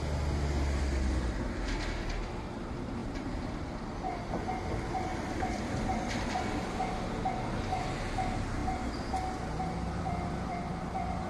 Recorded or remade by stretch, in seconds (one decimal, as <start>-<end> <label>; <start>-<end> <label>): 0.0-3.0 recorded; 3.0-4.3 remade; 4.3-5.1 recorded; 5.1-6.4 remade; 6.4-11.3 recorded